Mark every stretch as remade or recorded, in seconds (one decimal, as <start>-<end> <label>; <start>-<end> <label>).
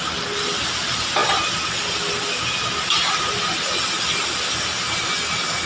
0.0-5.7 recorded